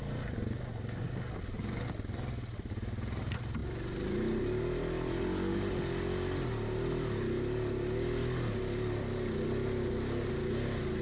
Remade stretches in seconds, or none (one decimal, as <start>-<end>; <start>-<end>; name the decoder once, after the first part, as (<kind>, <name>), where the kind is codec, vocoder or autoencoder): none

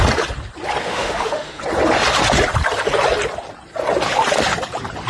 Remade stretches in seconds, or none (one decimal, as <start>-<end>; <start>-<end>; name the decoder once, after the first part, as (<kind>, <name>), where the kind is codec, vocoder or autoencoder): 0.8-1.6 (autoencoder, DAC-VAE)

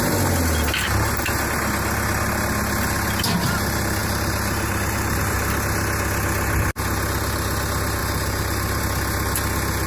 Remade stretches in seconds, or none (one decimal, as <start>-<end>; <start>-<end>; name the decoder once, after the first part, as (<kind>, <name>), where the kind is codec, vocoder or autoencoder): 4.0-5.2 (vocoder, BigVGAN v2); 8.0-8.8

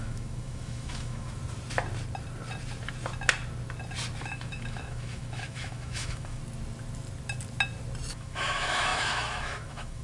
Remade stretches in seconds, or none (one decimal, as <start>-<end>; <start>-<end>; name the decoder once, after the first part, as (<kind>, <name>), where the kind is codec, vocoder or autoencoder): 0.0-1.4 (autoencoder, DAC-VAE); 4.2-6.4; 8.1-10.0

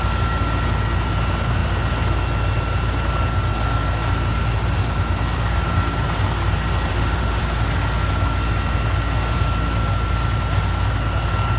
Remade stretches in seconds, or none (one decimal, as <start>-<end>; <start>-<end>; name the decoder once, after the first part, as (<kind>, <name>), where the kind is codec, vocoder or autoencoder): 6.9-7.4 (autoencoder, DAC-VAE)

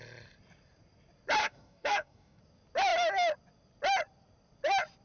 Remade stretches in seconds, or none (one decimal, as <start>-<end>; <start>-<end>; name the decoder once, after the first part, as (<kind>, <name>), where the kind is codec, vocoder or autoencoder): 1.4-2.4 (codec, DAC)